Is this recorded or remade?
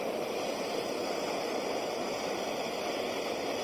recorded